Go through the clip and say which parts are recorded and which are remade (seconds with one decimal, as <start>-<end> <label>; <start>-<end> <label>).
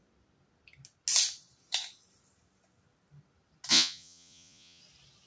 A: 0.0-3.7 recorded; 3.7-4.8 remade; 4.8-5.3 recorded